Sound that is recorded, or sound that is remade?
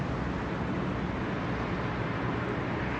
recorded